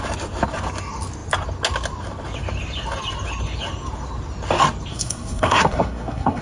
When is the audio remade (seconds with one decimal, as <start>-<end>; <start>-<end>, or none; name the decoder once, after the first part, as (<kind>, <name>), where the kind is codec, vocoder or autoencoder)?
4.9-6.4 (codec, SNAC)